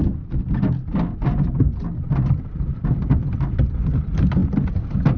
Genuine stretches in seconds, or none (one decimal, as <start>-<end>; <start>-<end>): 0.0-2.2; 4.4-5.2

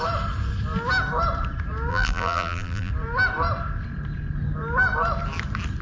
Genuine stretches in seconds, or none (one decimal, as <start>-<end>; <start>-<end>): 0.0-1.9; 2.9-5.8

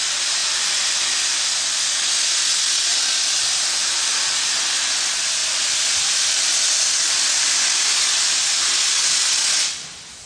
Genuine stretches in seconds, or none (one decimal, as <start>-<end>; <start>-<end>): 0.0-0.4; 2.0-3.8; 4.5-5.4; 7.9-10.3

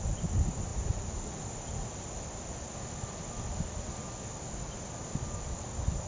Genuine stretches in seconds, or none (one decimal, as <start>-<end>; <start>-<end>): 0.0-6.1

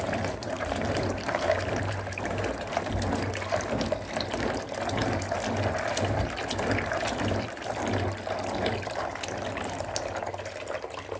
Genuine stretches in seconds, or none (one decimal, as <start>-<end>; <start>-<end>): 0.0-0.4; 2.7-11.2